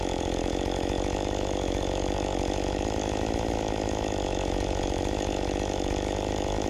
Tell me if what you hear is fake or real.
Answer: fake